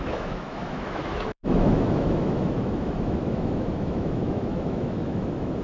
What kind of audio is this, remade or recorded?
remade